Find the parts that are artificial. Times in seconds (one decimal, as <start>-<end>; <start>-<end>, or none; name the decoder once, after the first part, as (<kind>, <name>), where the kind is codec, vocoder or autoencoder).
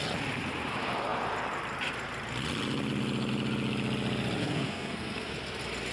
4.4-5.3 (codec, SNAC)